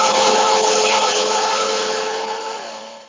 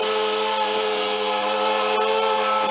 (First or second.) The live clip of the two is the second